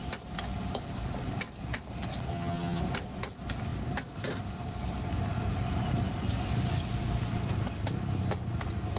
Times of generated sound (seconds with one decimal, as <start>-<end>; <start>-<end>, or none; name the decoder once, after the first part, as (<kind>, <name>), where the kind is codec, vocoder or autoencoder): 2.3-2.8 (vocoder, HiFi-GAN)